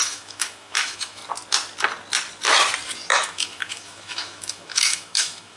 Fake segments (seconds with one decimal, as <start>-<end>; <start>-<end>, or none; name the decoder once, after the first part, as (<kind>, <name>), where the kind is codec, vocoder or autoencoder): 0.0-1.2 (autoencoder, DAC-VAE); 3.1-5.6